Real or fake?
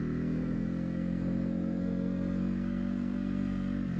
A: fake